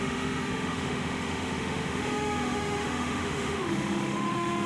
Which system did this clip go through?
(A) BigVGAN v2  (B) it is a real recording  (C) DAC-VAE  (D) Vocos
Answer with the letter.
C